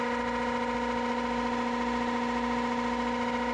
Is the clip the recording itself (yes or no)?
yes